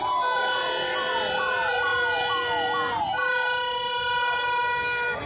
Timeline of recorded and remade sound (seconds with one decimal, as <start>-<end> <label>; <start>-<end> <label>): 0.0-5.3 recorded